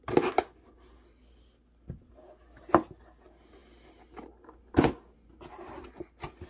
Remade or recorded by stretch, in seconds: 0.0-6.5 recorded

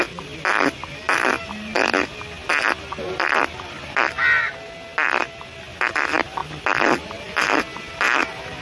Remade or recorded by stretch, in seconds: 0.0-8.6 recorded